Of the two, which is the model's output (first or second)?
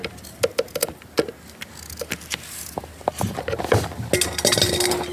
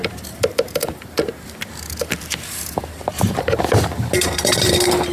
second